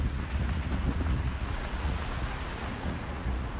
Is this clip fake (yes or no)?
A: yes